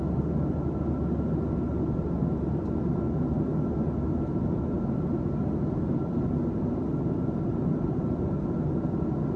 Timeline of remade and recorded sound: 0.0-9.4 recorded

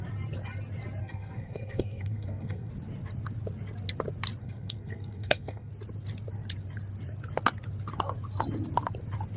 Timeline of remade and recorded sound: 0.0-1.0 recorded; 1.0-2.7 remade; 2.7-4.4 recorded; 4.4-5.7 remade; 5.7-9.4 recorded

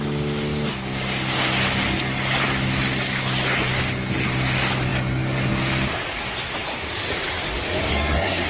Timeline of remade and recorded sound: 0.0-7.9 recorded; 7.9-8.5 remade

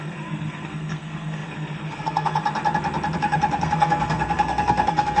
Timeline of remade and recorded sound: 0.0-2.4 remade; 2.4-3.2 recorded; 3.2-5.2 remade

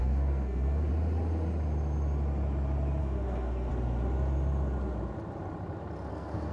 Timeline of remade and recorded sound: 0.0-0.9 remade; 0.9-3.0 recorded; 3.0-3.7 remade; 3.7-6.1 recorded; 6.1-6.5 remade

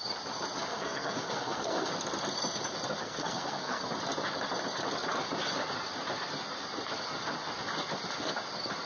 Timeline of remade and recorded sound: 0.0-0.7 recorded; 0.7-1.9 remade; 1.9-3.0 recorded; 3.0-3.9 remade; 3.9-8.9 recorded